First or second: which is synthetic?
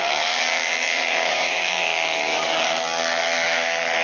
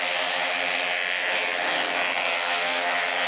first